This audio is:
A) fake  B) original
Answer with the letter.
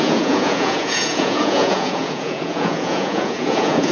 A